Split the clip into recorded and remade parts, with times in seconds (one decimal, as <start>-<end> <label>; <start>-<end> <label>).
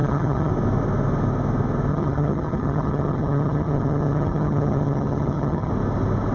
0.0-0.5 remade; 0.5-1.9 recorded; 1.9-5.7 remade; 5.7-6.3 recorded